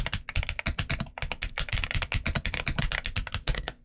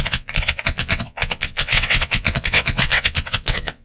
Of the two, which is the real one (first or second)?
first